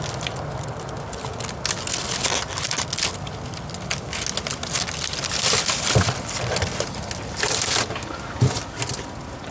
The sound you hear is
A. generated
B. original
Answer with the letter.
B